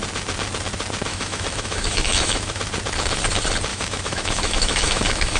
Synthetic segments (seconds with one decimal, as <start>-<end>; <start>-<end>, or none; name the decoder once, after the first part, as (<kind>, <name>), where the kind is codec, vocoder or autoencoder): 1.1-2.6 (autoencoder, DAC-VAE); 3.7-5.4